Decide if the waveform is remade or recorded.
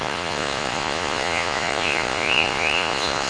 remade